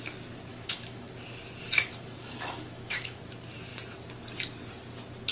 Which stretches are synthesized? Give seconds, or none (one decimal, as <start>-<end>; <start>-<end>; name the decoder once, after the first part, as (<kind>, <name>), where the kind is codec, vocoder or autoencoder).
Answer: 0.5-1.1 (autoencoder, DAC-VAE); 1.6-3.2